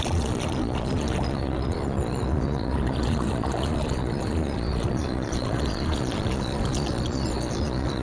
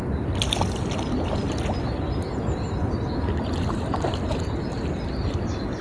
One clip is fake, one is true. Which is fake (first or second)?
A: first